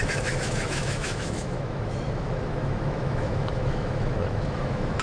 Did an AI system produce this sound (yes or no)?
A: yes